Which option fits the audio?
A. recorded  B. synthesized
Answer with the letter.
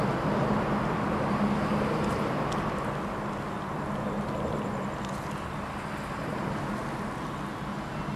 A